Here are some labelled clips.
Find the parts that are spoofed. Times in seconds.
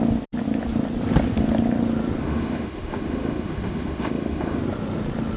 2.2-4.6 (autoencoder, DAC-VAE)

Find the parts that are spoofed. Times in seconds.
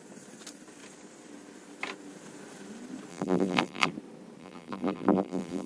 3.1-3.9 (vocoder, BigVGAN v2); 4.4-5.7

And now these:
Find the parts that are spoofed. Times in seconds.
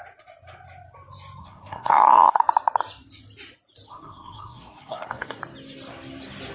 1.4-2.4 (codec, SNAC); 3.9-5.4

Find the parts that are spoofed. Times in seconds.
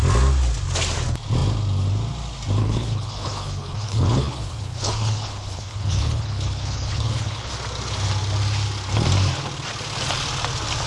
2.6-7.5 (codec, HILCodec)